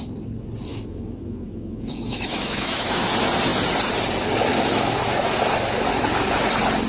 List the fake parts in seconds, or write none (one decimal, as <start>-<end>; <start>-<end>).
0.7-3.1; 4.5-5.8